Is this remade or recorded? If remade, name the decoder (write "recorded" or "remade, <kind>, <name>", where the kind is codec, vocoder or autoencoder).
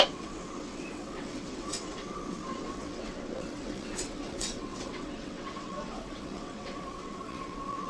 remade, vocoder, WaveNeXt